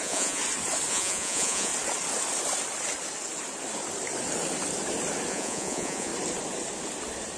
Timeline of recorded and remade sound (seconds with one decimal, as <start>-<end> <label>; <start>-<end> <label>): 0.0-0.4 remade; 0.4-0.9 recorded; 0.9-1.7 remade; 1.7-5.3 recorded; 5.3-6.1 remade; 6.1-7.4 recorded